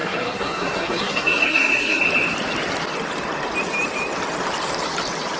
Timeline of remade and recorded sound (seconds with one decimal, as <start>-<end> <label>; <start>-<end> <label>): 0.0-2.0 remade; 2.0-5.4 recorded